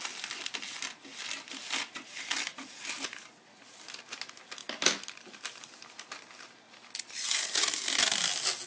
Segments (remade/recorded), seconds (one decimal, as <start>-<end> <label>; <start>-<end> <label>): 0.0-8.7 recorded